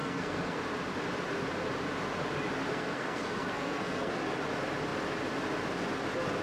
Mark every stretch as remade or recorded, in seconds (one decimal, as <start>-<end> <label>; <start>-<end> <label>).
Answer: 0.0-0.6 remade; 0.6-2.7 recorded; 2.7-4.1 remade; 4.1-6.4 recorded